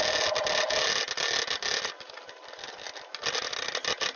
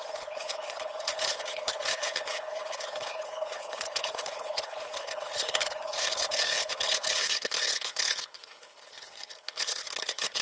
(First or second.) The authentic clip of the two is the first